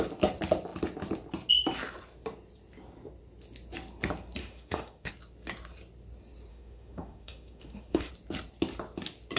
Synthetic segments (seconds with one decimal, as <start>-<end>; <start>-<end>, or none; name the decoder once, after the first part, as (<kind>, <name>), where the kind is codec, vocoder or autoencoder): 4.4-5.1 (autoencoder, DAC-VAE); 6.5-8.1